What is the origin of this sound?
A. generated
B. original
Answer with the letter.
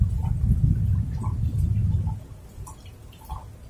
B